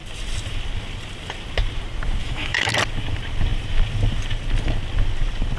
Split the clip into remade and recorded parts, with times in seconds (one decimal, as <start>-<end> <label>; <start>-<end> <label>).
0.0-2.2 recorded; 2.2-2.7 remade; 2.7-5.6 recorded